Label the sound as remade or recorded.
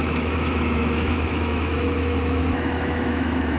remade